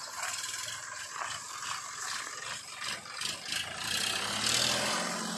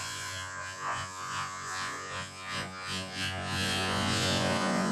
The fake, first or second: second